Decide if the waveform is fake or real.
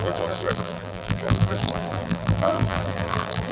fake